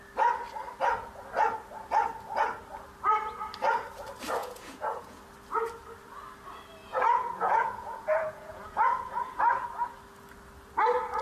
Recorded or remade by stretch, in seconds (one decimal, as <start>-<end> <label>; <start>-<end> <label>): 0.0-4.4 recorded; 4.4-5.2 remade; 5.2-6.8 recorded; 6.8-9.4 remade; 9.4-11.2 recorded

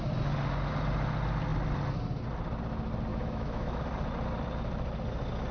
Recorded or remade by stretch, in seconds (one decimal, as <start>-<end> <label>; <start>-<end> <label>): 0.0-3.1 recorded; 3.1-3.8 remade; 3.8-5.5 recorded

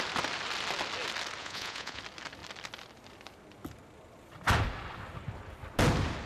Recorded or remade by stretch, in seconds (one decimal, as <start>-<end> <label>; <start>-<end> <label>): 0.0-1.4 recorded; 1.4-2.0 remade; 2.0-6.3 recorded